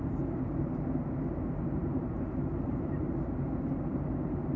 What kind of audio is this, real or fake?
fake